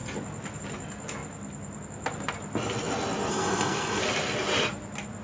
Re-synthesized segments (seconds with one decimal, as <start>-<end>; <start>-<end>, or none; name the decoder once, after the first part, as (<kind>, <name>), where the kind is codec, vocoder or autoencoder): 3.3-4.0 (codec, SNAC)